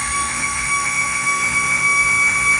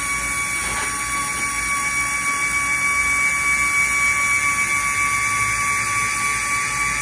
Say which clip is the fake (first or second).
first